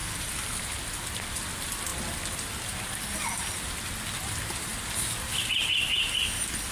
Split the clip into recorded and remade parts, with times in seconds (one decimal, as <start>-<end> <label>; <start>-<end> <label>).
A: 0.0-6.7 recorded